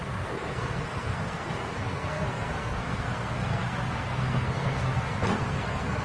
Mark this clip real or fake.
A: fake